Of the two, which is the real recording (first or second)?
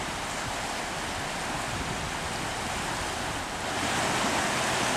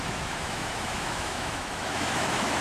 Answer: first